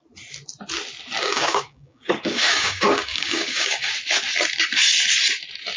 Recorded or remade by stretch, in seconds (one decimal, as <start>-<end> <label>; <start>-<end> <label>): 0.0-1.2 recorded; 1.2-3.9 remade; 3.9-5.8 recorded